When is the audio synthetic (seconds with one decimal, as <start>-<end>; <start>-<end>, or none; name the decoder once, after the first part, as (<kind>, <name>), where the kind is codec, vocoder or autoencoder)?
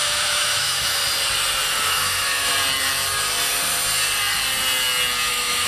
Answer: 0.0-1.0 (autoencoder, DAC-VAE); 1.8-2.5; 5.3-5.7